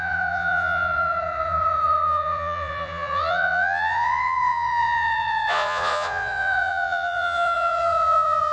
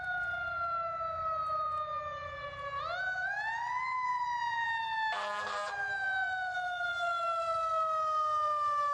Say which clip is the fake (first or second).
first